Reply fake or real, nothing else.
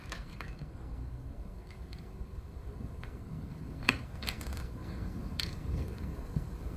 fake